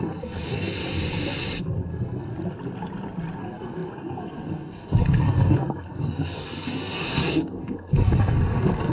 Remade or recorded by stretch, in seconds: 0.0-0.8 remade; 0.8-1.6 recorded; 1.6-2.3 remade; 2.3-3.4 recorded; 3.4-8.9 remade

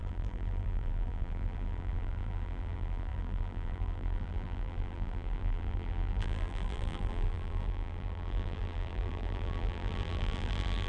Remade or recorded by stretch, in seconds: 0.0-10.9 remade

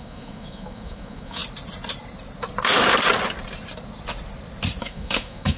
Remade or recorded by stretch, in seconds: 0.0-1.4 remade; 1.4-4.8 recorded; 4.8-5.6 remade